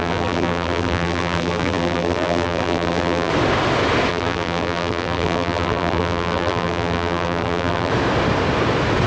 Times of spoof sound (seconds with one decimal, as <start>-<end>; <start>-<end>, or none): 0.0-3.3; 4.1-7.9